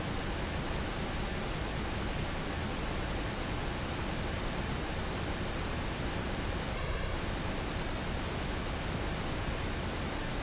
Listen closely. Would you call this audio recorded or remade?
recorded